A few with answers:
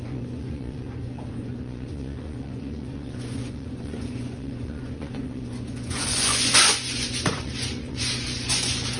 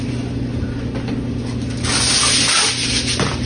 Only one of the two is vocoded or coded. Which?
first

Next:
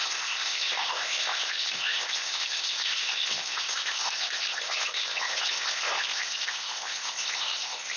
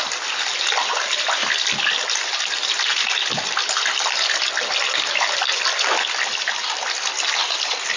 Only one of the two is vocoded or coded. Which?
first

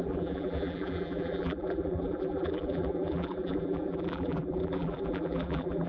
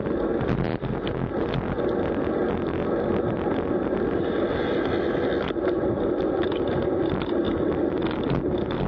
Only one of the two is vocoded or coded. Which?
first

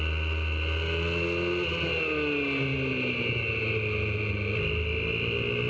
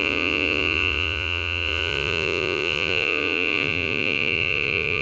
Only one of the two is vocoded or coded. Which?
second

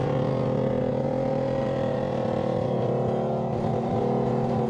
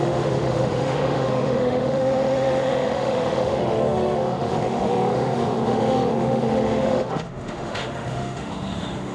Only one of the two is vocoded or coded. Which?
second